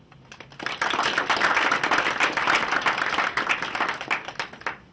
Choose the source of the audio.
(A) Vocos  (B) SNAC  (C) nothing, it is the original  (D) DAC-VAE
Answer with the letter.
C